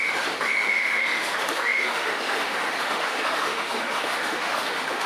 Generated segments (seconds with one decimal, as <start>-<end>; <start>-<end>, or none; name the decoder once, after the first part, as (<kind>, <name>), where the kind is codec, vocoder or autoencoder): 0.0-5.1 (autoencoder, DAC-VAE)